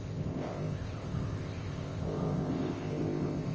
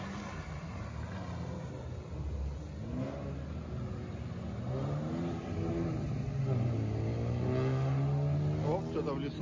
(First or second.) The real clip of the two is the second